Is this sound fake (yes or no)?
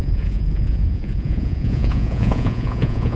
yes